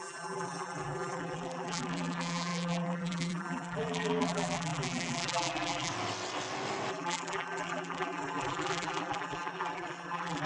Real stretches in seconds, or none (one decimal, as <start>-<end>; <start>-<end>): 5.9-6.9